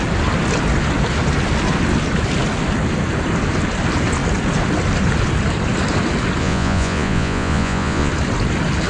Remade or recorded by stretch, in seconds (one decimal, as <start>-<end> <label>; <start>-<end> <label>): 0.0-6.4 recorded; 6.4-8.1 remade; 8.1-8.9 recorded